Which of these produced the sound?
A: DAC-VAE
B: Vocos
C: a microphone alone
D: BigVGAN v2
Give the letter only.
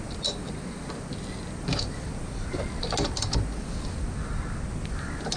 C